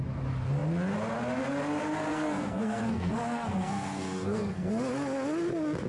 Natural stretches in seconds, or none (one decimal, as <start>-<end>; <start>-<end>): 0.0-2.1; 4.7-5.9

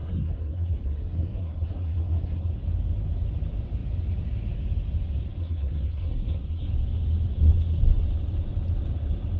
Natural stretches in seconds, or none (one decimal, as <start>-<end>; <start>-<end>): 2.5-5.4; 6.7-9.4

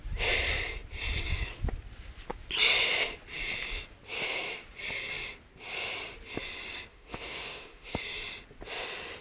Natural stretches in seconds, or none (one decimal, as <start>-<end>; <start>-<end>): 0.0-6.9; 8.0-9.2